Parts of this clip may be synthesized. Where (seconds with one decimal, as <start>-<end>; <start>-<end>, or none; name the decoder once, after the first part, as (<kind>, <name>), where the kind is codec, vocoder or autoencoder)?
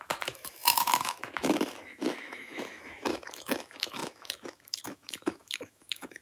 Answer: 0.0-6.2 (autoencoder, DAC-VAE)